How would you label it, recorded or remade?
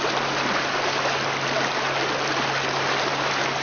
recorded